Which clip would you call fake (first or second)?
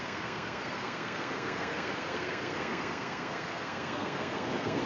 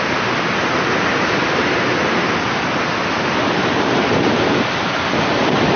first